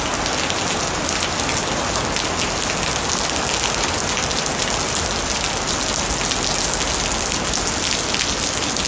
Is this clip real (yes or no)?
yes